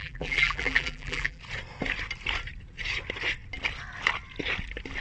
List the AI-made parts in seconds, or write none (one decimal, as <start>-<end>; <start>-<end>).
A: 0.0-1.4